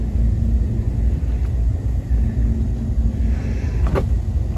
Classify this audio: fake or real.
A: real